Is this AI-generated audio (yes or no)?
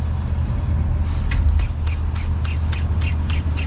no